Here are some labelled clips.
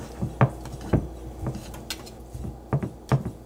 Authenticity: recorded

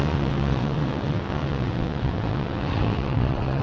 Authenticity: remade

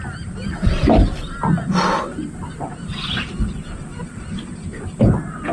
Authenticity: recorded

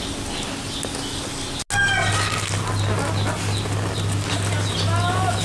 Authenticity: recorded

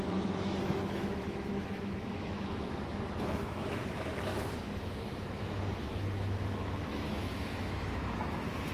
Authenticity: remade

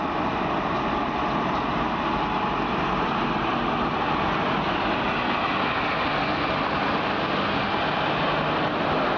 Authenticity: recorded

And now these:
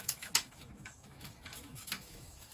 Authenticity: remade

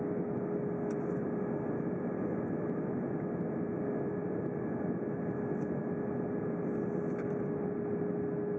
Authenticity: recorded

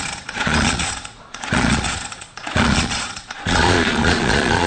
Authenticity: remade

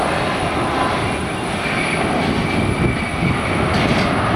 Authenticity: recorded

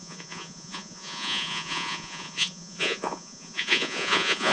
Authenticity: remade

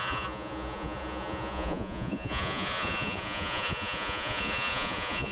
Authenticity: remade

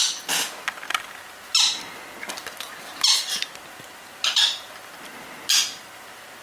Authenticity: recorded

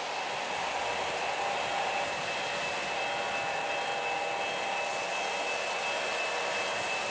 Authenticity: recorded